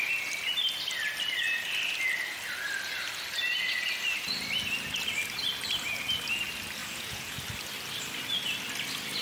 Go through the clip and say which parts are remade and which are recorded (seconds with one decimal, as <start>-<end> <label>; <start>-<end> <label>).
0.0-6.8 recorded; 6.8-7.4 remade; 7.4-9.2 recorded